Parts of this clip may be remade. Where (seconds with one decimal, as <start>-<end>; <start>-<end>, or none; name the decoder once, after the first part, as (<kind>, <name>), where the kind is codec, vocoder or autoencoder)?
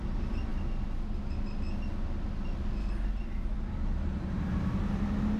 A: 3.9-4.9 (vocoder, BigVGAN v2)